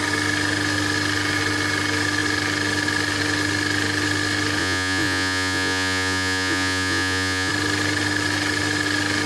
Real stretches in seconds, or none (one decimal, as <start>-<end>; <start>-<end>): 0.0-4.6; 7.5-9.3